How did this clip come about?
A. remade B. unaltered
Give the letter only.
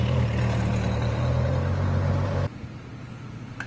B